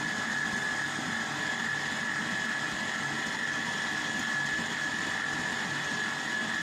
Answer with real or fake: real